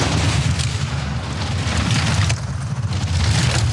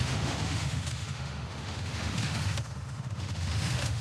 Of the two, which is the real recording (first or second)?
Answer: first